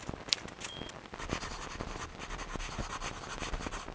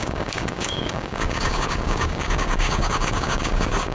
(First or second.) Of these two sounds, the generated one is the second